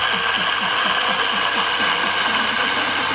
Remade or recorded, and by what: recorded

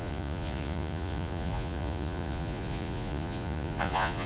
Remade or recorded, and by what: remade, vocoder, Vocos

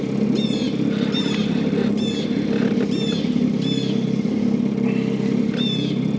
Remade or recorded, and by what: recorded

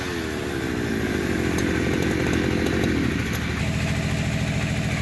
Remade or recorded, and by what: recorded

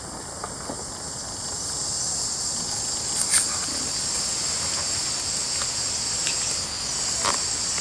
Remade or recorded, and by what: recorded